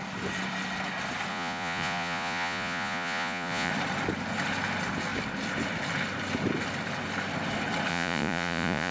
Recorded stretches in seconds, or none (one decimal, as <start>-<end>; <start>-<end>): 0.0-1.3; 3.7-7.9